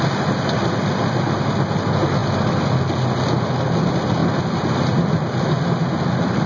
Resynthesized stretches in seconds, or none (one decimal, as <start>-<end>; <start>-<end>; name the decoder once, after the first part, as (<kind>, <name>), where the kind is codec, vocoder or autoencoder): none